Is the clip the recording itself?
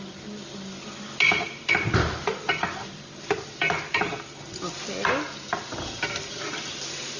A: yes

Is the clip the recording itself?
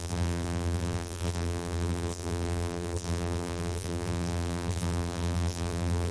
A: no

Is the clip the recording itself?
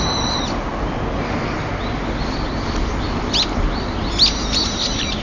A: yes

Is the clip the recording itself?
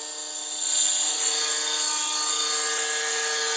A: yes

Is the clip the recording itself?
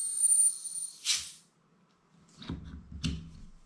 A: yes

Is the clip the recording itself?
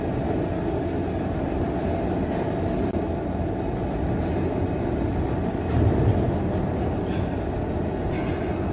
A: yes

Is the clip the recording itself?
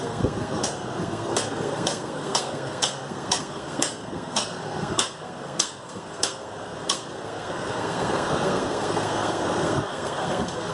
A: no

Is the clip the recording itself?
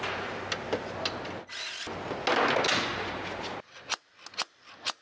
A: yes